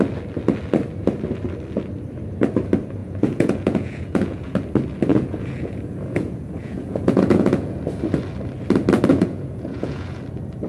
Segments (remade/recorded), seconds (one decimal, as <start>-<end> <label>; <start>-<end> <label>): 0.0-3.0 recorded; 3.0-4.5 remade; 4.5-5.1 recorded; 5.1-7.8 remade; 7.8-9.1 recorded; 9.1-10.2 remade; 10.2-10.7 recorded